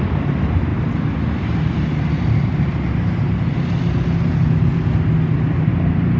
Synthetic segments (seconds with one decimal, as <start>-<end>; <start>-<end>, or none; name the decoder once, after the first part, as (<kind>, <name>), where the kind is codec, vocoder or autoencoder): none